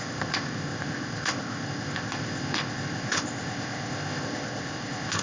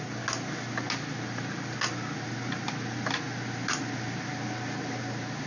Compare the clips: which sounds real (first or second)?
second